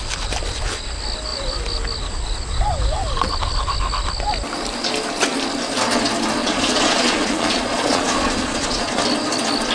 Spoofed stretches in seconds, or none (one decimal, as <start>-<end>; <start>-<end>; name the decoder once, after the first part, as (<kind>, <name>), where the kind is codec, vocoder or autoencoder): 6.4-9.0 (vocoder, Vocos)